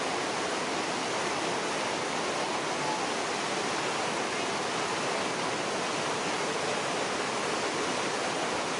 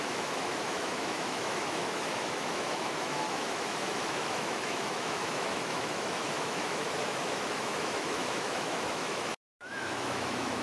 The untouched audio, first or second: first